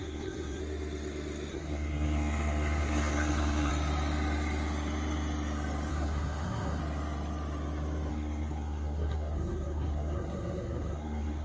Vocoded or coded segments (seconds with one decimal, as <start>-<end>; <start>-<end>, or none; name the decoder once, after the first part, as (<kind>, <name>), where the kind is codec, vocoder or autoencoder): 0.0-0.6 (codec, SNAC); 1.5-3.7; 5.9-6.8; 8.1-11.4